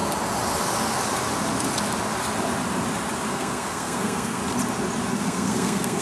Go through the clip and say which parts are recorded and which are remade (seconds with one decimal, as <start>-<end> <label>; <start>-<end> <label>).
0.0-3.3 recorded; 3.3-4.4 remade; 4.4-5.1 recorded; 5.1-6.0 remade